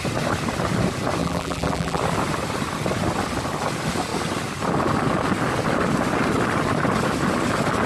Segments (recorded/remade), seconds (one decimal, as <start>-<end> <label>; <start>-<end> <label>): 0.0-1.2 recorded; 1.2-2.0 remade; 2.0-7.9 recorded